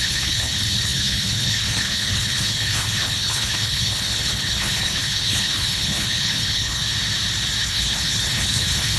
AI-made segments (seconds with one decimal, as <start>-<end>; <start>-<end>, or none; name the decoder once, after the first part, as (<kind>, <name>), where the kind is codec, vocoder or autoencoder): 0.0-6.9 (codec, HILCodec); 7.6-9.0